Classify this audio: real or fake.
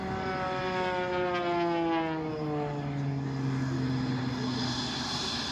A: real